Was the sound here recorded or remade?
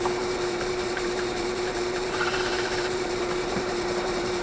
remade